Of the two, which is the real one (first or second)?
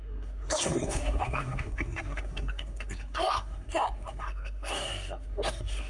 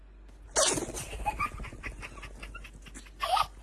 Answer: second